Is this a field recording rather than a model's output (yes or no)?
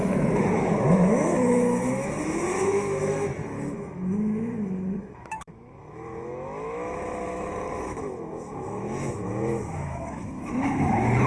no